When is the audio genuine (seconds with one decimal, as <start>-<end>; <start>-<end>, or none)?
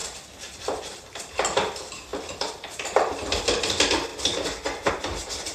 0.0-1.0